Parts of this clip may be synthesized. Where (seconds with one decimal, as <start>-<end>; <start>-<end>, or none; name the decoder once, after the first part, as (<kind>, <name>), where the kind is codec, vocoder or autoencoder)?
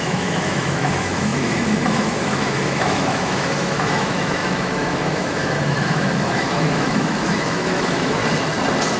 0.0-8.2 (autoencoder, DAC-VAE)